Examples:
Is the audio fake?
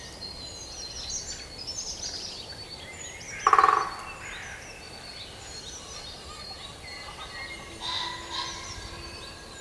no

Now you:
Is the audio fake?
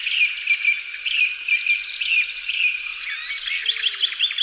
no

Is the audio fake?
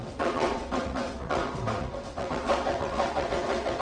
yes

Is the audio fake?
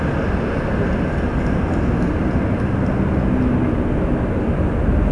no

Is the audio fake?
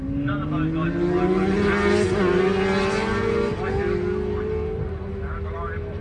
no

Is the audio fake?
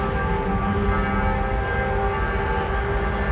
no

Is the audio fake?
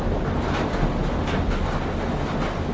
no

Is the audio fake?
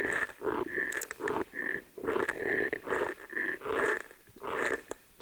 no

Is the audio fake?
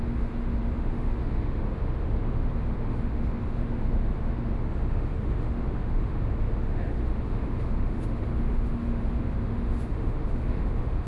yes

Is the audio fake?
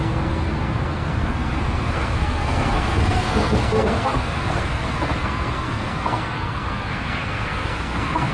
yes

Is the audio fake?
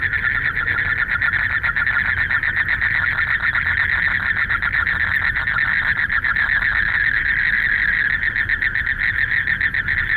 no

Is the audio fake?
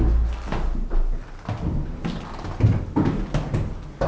no